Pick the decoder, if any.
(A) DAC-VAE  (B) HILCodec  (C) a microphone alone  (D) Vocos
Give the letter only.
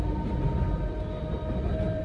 C